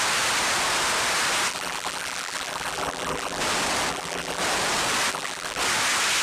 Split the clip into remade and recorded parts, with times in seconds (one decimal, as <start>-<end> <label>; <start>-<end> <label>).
0.0-1.5 recorded; 1.5-3.4 remade; 3.4-3.9 recorded; 3.9-4.4 remade; 4.4-5.1 recorded; 5.1-5.6 remade; 5.6-6.2 recorded